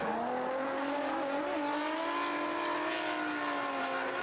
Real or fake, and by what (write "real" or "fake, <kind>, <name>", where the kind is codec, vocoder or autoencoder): real